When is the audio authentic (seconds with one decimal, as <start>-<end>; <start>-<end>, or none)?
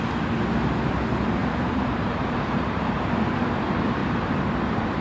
0.0-1.4; 3.5-5.0